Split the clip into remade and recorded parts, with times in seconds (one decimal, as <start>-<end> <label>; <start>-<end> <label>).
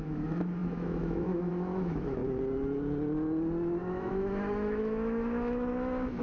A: 0.0-2.2 remade; 2.2-3.8 recorded; 3.8-6.2 remade